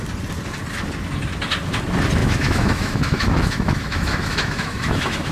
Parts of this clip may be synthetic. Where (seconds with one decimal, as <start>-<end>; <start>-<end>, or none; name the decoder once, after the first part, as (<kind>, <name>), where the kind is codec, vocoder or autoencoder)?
2.2-5.3 (autoencoder, DAC-VAE)